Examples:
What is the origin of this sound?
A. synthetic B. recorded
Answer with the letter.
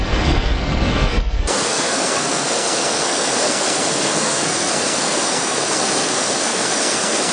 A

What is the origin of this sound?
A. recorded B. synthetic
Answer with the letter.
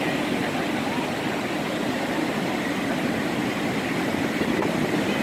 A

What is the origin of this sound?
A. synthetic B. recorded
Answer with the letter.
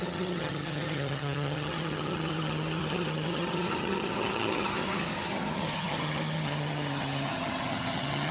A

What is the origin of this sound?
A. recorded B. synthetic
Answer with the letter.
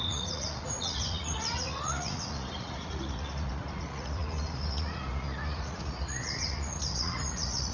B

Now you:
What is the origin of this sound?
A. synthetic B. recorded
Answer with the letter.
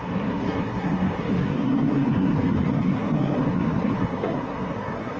A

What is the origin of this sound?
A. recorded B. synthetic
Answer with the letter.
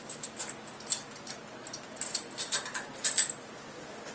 A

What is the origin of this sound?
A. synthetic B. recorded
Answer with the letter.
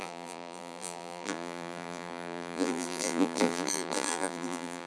A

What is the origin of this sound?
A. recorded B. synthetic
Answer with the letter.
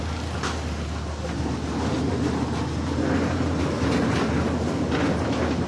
A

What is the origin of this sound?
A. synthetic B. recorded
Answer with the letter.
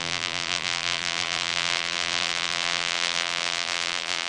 A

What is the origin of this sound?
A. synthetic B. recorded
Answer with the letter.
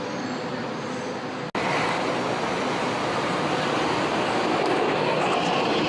B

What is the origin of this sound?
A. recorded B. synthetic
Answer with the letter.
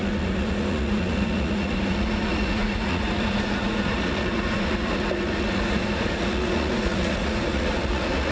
B